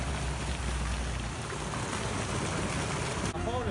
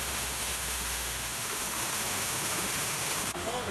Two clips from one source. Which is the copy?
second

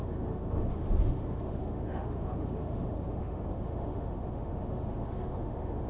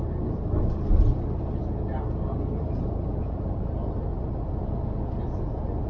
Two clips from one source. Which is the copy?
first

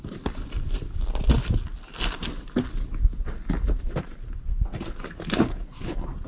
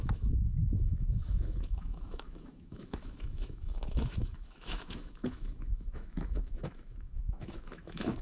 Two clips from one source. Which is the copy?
second